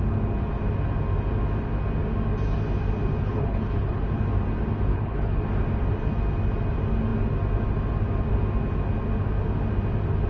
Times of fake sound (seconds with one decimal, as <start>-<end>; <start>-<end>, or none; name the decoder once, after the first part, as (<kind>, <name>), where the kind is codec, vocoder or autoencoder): 3.2-4.0 (codec, HILCodec); 4.9-5.4